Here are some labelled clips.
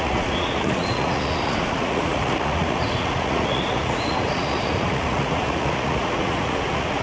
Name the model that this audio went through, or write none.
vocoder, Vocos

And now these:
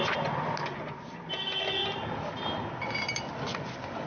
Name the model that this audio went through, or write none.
none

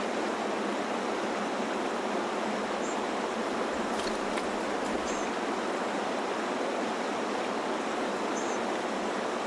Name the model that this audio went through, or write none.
none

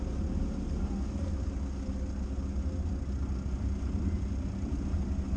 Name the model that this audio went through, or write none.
none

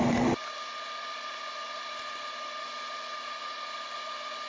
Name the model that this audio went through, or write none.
none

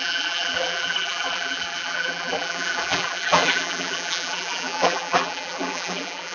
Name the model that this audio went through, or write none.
vocoder, BigVGAN v2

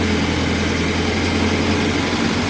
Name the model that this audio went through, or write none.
none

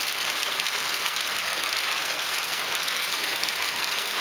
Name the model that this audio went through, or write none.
codec, SNAC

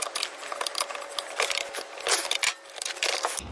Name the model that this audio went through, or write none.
none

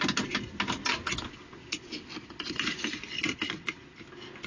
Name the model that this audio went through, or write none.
none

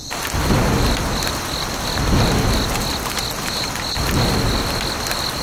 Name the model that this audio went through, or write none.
none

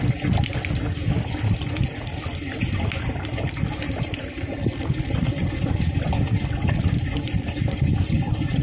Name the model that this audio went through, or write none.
none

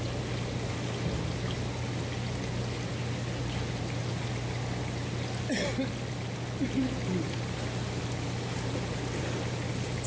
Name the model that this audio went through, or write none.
none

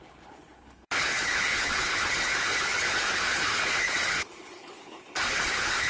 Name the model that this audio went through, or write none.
codec, HILCodec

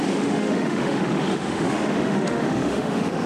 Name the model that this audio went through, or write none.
autoencoder, DAC-VAE